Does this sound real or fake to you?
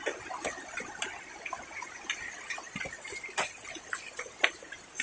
real